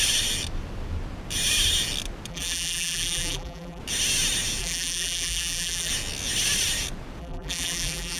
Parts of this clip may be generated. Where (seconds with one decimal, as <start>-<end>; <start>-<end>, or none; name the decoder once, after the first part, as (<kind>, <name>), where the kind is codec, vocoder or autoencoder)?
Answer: 2.3-3.8 (vocoder, BigVGAN v2); 4.6-5.9; 7.2-8.2